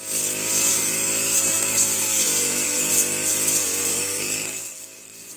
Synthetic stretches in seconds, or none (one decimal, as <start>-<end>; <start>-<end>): 0.7-2.9; 3.9-5.4